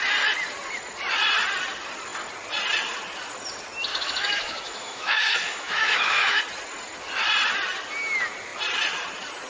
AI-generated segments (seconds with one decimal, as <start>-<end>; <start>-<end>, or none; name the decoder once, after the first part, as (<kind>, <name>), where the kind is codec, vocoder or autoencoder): 3.9-6.4 (autoencoder, DAC-VAE)